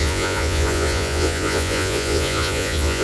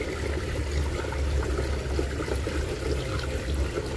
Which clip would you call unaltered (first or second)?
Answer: second